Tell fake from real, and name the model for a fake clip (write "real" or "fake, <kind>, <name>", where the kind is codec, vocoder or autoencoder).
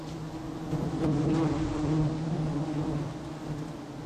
real